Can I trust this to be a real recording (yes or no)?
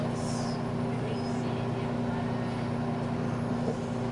yes